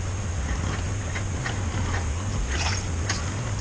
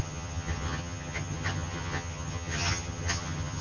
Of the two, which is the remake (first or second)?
second